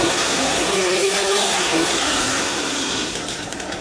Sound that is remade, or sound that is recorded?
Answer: remade